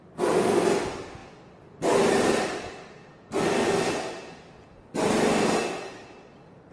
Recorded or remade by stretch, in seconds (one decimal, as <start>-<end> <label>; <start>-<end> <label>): 0.0-6.7 recorded

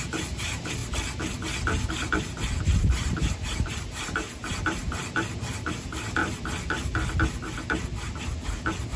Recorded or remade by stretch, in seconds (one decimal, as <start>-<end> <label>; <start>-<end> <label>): 0.0-0.8 remade; 0.8-1.9 recorded; 1.9-6.2 remade; 6.2-8.1 recorded; 8.1-9.0 remade

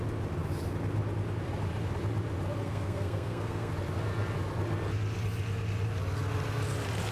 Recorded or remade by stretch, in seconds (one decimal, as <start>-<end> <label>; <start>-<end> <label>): 0.0-2.6 recorded; 2.6-3.7 remade; 3.7-7.1 recorded

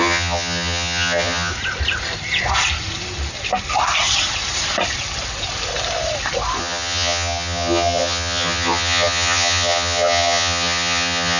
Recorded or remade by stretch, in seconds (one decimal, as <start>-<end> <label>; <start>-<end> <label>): 0.0-1.5 remade; 1.5-6.6 recorded; 6.6-11.4 remade

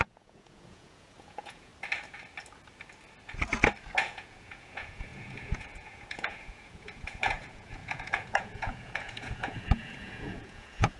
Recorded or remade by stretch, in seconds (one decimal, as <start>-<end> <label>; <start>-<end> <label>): 0.0-1.7 remade; 1.7-4.0 recorded; 4.0-11.0 remade